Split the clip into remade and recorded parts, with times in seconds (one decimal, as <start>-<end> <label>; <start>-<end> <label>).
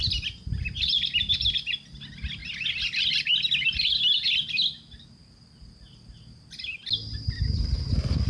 0.0-8.3 recorded